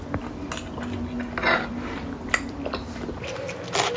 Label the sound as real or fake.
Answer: real